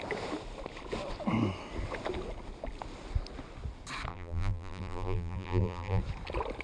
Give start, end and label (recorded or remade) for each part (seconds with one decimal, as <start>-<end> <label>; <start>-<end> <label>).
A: 0.0-4.1 recorded; 4.1-6.0 remade; 6.0-6.6 recorded

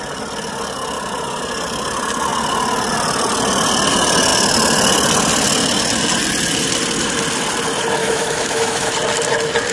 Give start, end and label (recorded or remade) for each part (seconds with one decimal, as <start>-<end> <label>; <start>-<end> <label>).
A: 0.0-8.0 recorded; 8.0-8.9 remade; 8.9-9.7 recorded